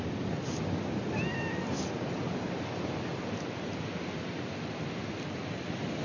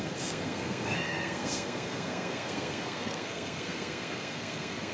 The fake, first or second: second